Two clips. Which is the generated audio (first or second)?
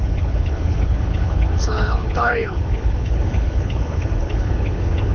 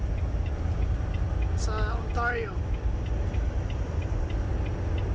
first